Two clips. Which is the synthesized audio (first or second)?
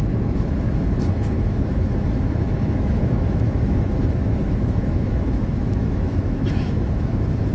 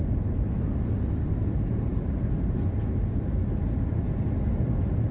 first